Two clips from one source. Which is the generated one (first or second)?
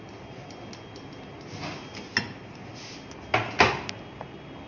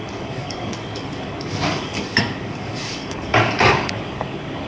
second